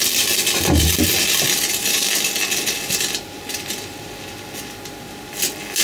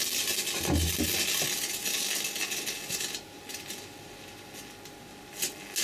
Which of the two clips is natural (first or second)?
second